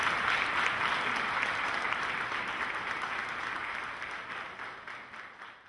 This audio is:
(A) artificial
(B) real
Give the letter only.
B